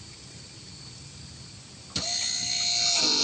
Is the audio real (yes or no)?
yes